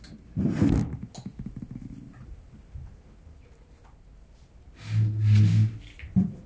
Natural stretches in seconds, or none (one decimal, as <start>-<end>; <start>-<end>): 0.0-6.5

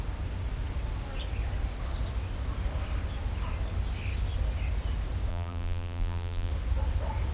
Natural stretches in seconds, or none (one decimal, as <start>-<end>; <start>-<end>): 0.0-5.3; 6.5-7.3